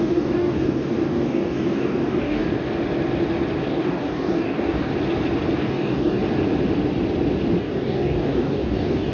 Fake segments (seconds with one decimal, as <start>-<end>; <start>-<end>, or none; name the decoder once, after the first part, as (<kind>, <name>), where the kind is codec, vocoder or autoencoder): 0.0-2.5 (codec, DAC); 3.7-4.9; 5.6-6.2; 7.6-9.1